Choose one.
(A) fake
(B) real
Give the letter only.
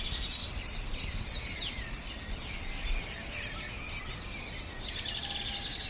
B